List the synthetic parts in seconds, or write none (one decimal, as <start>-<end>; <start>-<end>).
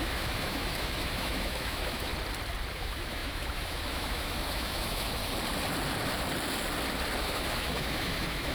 0.0-2.1; 2.7-5.2; 7.2-8.5